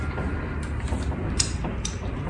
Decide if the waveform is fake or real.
real